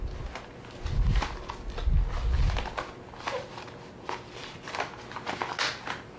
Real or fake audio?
real